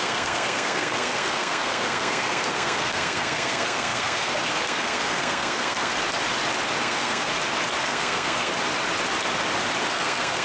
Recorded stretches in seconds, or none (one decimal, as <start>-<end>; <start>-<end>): 5.9-6.8; 7.3-7.8; 8.5-9.9